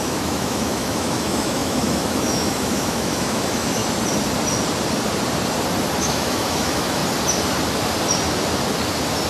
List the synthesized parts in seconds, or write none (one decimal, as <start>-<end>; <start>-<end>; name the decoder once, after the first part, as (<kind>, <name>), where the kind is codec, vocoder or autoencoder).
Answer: 0.0-3.8 (autoencoder, DAC-VAE); 6.0-7.0